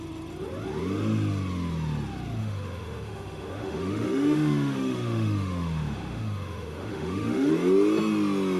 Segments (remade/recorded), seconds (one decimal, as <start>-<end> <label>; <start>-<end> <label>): 0.0-2.4 recorded; 2.4-7.5 remade; 7.5-8.6 recorded